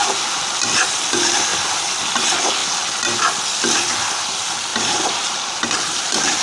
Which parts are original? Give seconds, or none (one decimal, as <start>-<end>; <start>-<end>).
0.0-4.7